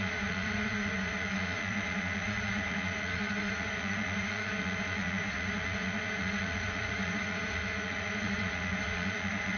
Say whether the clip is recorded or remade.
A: remade